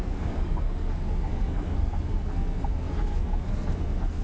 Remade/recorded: remade